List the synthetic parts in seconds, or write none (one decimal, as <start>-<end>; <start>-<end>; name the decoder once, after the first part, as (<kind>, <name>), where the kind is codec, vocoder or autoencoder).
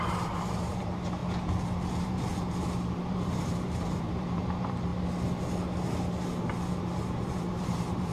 0.0-1.2 (vocoder, BigVGAN v2); 1.9-2.3; 3.1-4.9; 7.0-8.1